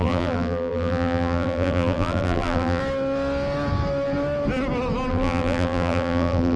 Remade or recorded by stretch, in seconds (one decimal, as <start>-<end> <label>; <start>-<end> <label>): 0.0-2.8 remade; 2.8-5.1 recorded; 5.1-6.6 remade